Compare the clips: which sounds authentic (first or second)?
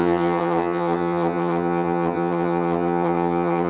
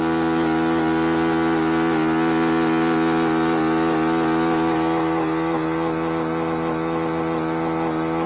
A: second